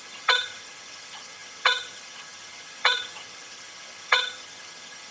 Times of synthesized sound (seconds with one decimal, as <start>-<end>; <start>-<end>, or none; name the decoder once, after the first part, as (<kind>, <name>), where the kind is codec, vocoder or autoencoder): 0.0-5.1 (vocoder, HiFi-GAN)